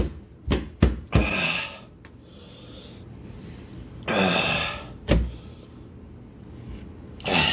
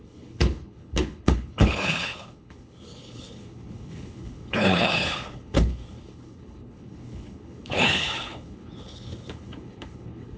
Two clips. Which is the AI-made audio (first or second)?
second